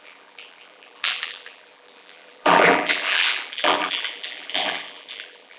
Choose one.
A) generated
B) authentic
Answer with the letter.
A